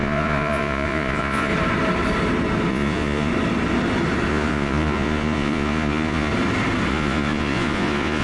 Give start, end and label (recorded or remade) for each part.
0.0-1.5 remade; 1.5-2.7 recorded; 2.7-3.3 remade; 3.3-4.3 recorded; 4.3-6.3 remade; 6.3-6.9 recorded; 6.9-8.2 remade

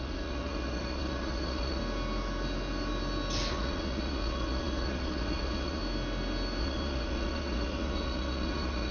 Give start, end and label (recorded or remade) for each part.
0.0-1.8 remade; 1.8-3.5 recorded; 3.5-5.8 remade; 5.8-6.6 recorded; 6.6-8.9 remade

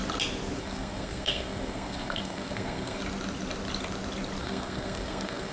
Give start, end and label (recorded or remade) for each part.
0.0-0.6 recorded; 0.6-3.0 remade; 3.0-4.4 recorded; 4.4-5.5 remade

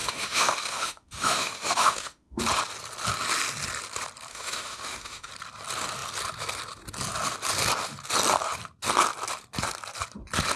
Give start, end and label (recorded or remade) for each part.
0.0-2.4 remade; 2.4-4.3 recorded; 4.3-5.3 remade; 5.3-10.6 recorded

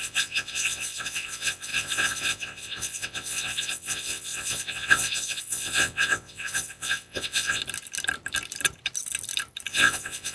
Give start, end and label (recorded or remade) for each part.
0.0-7.6 remade; 7.6-9.7 recorded; 9.7-10.3 remade

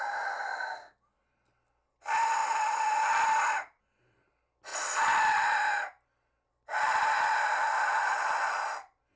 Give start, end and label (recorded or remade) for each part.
0.0-9.2 recorded

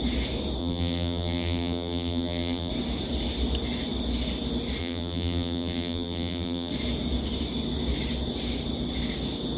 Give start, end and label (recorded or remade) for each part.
0.0-0.6 recorded; 0.6-2.7 remade; 2.7-4.8 recorded; 4.8-6.7 remade; 6.7-9.6 recorded